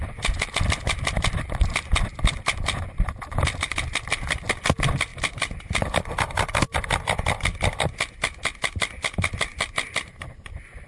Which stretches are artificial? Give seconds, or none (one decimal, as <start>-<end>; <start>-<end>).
none